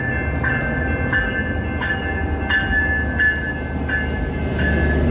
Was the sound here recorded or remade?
recorded